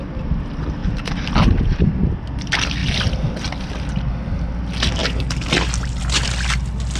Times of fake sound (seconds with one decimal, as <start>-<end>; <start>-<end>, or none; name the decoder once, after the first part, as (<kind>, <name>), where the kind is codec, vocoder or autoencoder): none